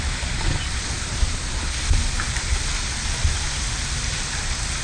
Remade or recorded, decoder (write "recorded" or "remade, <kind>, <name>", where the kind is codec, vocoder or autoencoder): recorded